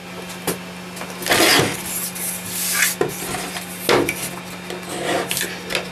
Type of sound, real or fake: real